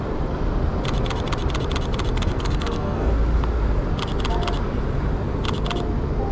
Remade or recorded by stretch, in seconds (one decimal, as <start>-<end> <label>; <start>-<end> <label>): 0.0-2.1 recorded; 2.1-3.1 remade; 3.1-6.3 recorded